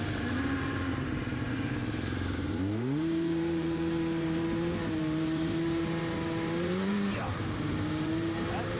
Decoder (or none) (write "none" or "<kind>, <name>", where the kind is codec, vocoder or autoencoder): vocoder, BigVGAN v2